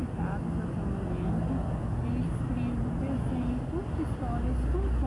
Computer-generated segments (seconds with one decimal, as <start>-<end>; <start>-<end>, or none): none